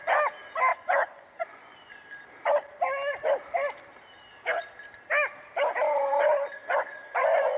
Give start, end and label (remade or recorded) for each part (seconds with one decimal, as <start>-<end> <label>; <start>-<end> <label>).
0.0-0.7 recorded; 0.7-1.9 remade; 1.9-6.6 recorded; 6.6-7.6 remade